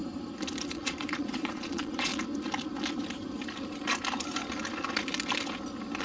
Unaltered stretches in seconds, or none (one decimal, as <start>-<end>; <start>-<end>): 0.0-0.7; 2.1-6.0